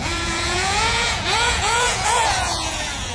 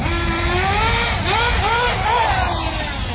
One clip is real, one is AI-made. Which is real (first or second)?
second